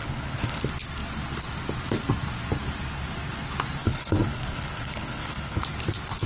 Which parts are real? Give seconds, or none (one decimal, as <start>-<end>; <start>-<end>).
0.6-3.8; 5.6-6.3